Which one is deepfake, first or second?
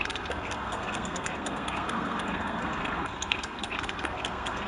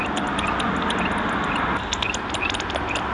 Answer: first